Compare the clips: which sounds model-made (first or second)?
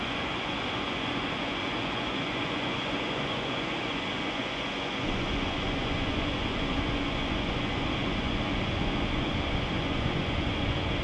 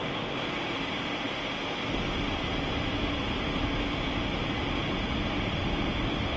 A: first